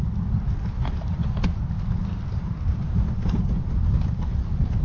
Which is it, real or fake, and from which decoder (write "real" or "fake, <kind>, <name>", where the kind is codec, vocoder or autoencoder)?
real